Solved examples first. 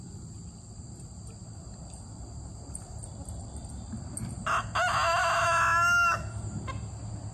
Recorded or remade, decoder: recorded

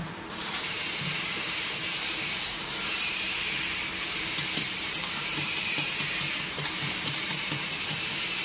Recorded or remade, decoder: remade, vocoder, BigVGAN v2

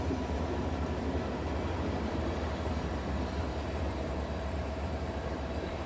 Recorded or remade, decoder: remade, vocoder, BigVGAN v2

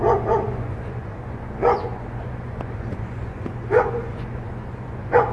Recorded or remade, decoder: remade, vocoder, Vocos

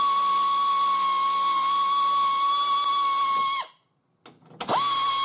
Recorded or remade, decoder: recorded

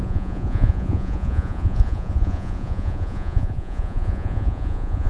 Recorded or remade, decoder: remade, vocoder, Vocos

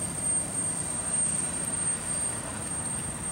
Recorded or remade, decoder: recorded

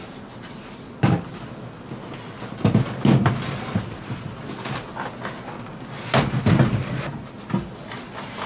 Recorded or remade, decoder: recorded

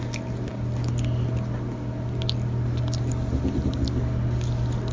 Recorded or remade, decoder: recorded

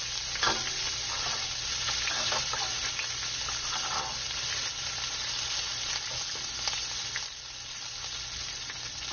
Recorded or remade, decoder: recorded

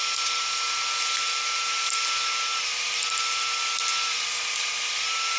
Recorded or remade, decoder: recorded